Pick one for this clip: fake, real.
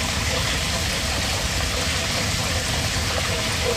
real